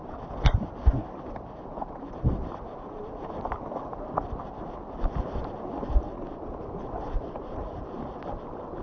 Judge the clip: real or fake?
real